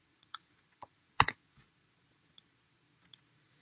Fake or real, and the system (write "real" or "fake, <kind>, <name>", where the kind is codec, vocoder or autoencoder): fake, vocoder, Vocos